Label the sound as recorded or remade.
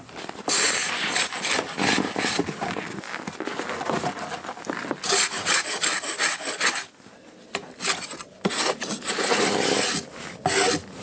recorded